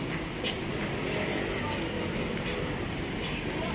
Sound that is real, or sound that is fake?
real